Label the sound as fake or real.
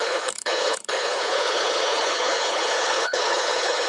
fake